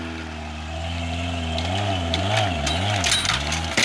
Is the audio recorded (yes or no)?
yes